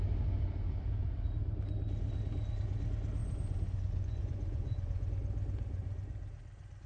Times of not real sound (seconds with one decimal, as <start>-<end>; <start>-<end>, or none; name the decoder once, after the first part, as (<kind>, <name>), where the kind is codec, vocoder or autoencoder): 3.2-5.1 (vocoder, Vocos)